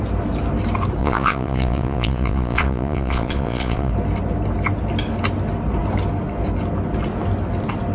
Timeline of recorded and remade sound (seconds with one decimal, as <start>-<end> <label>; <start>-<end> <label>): 0.0-1.0 recorded; 1.0-3.9 remade; 3.9-7.9 recorded